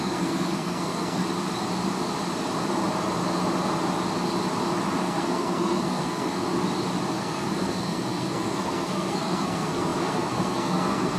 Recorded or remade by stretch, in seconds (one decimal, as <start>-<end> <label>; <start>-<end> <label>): 0.0-1.2 remade; 1.2-5.0 recorded; 5.0-6.4 remade; 6.4-7.1 recorded; 7.1-11.2 remade